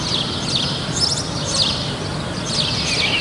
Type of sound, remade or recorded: recorded